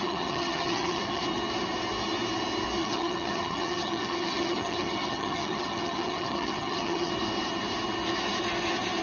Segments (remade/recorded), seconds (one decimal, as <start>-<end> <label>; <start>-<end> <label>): 0.0-1.2 remade; 1.2-2.8 recorded; 2.8-7.1 remade; 7.1-9.0 recorded